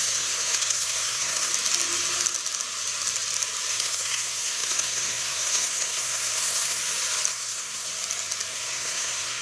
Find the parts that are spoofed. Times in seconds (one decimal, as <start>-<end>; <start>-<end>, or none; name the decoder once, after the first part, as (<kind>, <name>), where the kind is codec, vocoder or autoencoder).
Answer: 0.0-1.5 (codec, SNAC); 3.7-6.8; 7.3-7.9; 8.5-9.4